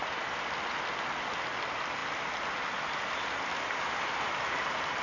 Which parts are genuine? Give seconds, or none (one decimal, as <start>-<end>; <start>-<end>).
0.0-5.0